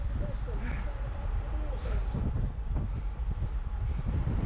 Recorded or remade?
recorded